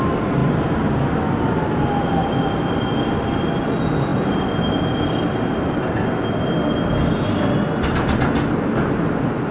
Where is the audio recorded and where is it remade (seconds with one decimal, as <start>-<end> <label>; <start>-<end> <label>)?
0.0-9.5 recorded